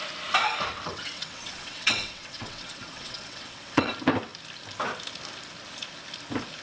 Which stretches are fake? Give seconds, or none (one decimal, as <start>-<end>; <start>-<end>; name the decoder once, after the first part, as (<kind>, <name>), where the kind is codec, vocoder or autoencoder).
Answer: 0.7-3.9 (vocoder, WaveNeXt)